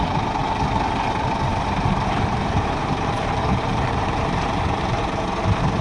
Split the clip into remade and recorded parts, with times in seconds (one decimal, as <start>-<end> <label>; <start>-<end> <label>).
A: 0.0-1.5 recorded; 1.5-5.0 remade; 5.0-5.8 recorded